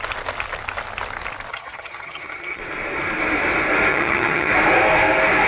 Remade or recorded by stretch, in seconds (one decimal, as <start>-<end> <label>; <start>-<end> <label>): 0.0-1.5 recorded; 1.5-2.6 remade; 2.6-3.9 recorded; 3.9-4.5 remade; 4.5-5.5 recorded